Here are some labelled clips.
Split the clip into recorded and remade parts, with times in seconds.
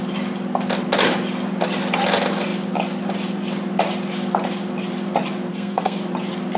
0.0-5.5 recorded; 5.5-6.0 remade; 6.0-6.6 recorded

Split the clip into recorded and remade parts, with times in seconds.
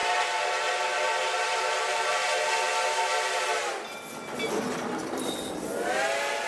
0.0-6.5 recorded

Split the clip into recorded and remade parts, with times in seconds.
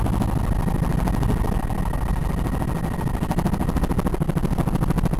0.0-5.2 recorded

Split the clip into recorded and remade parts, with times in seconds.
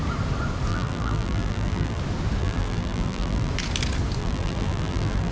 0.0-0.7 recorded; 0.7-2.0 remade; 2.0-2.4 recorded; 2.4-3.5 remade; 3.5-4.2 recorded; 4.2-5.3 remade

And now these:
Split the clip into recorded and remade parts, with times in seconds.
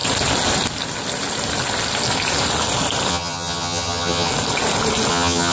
0.0-3.1 recorded; 3.1-4.3 remade; 4.3-5.1 recorded; 5.1-5.5 remade